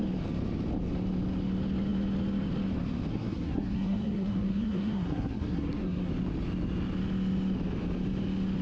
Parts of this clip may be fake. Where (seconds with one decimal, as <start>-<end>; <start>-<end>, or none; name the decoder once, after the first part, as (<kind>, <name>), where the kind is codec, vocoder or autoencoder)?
3.1-6.1 (codec, SNAC)